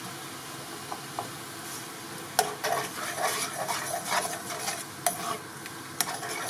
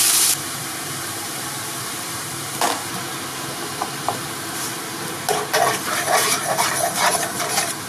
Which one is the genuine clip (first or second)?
first